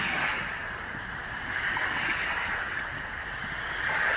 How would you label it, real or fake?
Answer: real